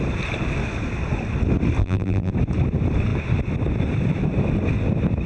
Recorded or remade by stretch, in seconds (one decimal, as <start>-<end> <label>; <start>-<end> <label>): 0.0-1.8 recorded; 1.8-2.3 remade; 2.3-5.3 recorded